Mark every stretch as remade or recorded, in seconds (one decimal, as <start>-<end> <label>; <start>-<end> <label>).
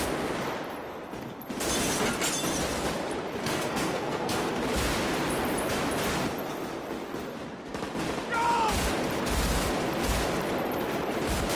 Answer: 0.0-3.4 recorded; 3.4-4.5 remade; 4.5-11.6 recorded